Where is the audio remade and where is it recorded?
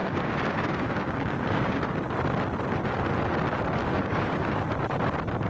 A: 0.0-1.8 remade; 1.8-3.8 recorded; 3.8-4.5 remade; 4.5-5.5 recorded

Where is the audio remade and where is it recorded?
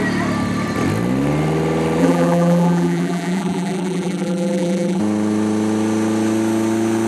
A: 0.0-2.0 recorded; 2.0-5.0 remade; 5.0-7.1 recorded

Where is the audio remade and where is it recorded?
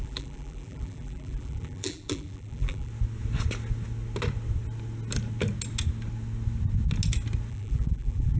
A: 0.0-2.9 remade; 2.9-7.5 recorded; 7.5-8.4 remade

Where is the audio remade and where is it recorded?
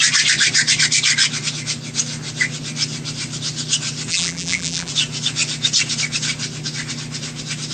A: 0.0-4.1 recorded; 4.1-4.9 remade; 4.9-7.7 recorded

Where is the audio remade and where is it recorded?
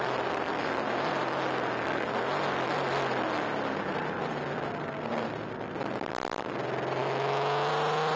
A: 0.0-7.0 recorded; 7.0-7.7 remade; 7.7-8.2 recorded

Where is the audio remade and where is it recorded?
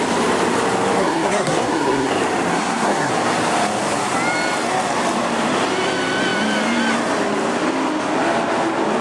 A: 0.0-1.0 recorded; 1.0-2.1 remade; 2.1-2.5 recorded; 2.5-3.1 remade; 3.1-9.0 recorded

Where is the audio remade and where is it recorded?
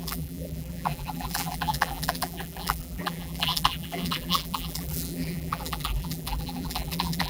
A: 0.0-7.3 remade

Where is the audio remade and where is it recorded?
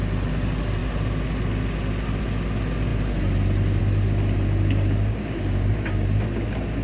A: 0.0-5.1 recorded; 5.1-5.7 remade; 5.7-6.8 recorded